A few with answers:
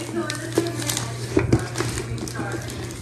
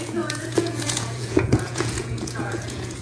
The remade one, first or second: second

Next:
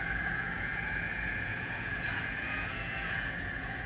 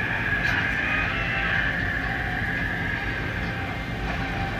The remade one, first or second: first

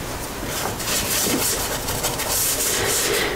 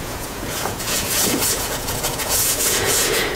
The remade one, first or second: second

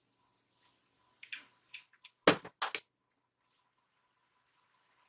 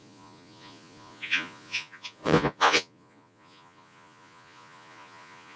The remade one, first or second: second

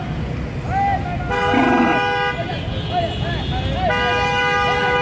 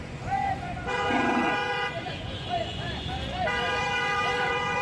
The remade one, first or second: second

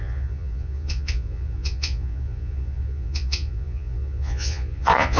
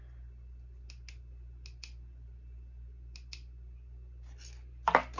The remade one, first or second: first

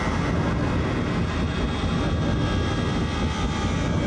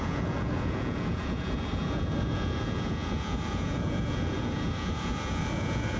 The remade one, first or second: second